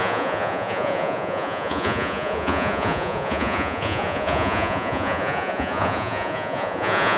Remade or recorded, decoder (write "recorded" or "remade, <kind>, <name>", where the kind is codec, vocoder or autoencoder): remade, vocoder, Vocos